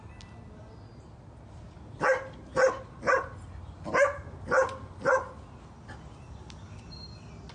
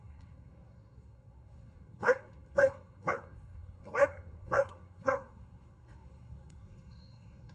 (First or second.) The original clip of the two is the first